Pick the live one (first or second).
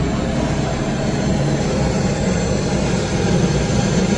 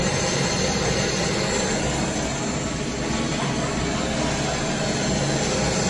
second